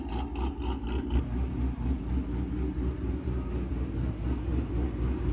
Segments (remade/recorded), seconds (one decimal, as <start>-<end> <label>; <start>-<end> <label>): 0.0-5.3 recorded